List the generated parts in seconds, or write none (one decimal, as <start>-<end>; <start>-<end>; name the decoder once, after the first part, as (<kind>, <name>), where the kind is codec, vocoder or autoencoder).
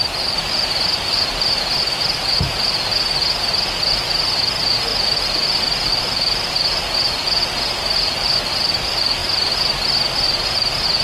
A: 4.9-5.9 (vocoder, BigVGAN v2); 9.2-10.1